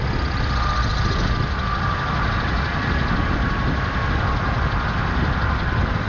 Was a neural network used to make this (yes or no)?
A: no